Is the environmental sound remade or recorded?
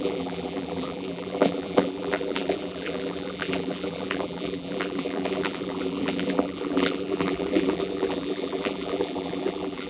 remade